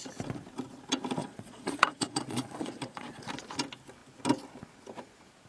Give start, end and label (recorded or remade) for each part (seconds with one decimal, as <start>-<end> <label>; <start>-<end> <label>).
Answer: 0.0-1.2 recorded; 1.2-3.3 remade; 3.3-5.5 recorded